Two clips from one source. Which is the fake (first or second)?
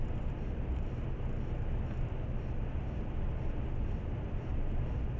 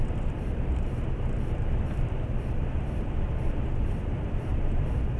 second